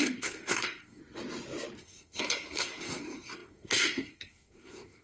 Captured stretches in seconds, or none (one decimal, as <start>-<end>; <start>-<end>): 1.0-1.8